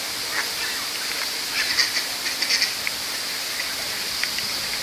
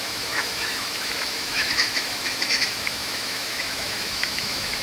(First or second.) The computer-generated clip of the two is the second